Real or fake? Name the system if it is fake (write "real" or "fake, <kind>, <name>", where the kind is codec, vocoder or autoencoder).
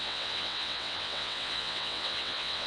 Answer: fake, vocoder, WaveNeXt